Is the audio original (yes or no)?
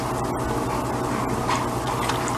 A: yes